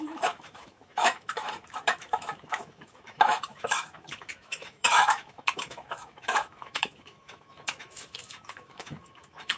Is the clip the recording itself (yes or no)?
no